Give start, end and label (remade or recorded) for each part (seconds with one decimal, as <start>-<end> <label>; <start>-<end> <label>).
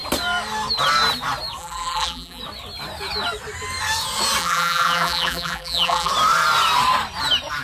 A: 0.0-1.6 recorded; 1.6-2.4 remade; 2.4-4.4 recorded; 4.4-6.1 remade; 6.1-7.6 recorded